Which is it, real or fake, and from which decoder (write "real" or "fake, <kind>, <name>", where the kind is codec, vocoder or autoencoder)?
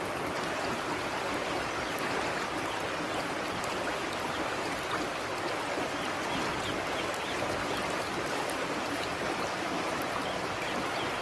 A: real